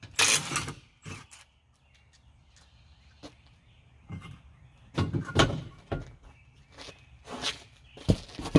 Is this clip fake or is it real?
real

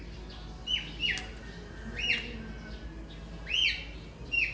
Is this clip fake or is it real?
real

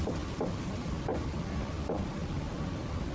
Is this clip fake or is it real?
real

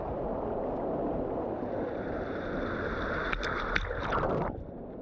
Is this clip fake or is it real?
real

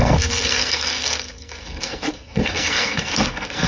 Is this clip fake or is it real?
fake